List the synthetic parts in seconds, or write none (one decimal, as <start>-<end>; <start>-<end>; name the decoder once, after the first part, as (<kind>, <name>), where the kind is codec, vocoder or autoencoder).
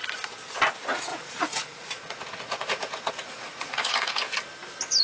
1.1-4.1 (vocoder, Vocos)